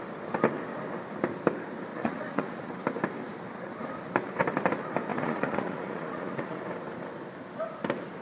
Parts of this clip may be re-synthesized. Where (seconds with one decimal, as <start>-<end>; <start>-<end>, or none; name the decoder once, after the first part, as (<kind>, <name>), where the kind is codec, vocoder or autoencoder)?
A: 1.9-2.7 (vocoder, Vocos); 5.1-6.6